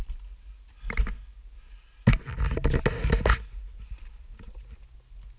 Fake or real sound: real